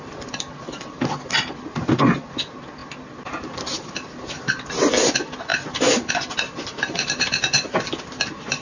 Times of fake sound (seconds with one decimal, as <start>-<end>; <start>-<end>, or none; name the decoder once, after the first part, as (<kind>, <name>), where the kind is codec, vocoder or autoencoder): 5.5-7.1 (vocoder, BigVGAN v2)